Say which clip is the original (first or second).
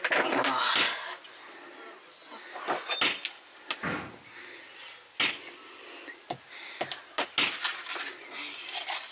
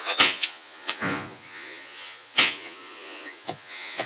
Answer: first